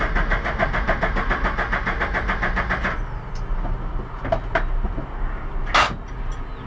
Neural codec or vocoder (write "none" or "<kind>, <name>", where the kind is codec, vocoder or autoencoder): none